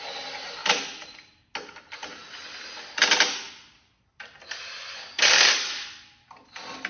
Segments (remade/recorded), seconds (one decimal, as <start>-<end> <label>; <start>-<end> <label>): 0.0-6.9 recorded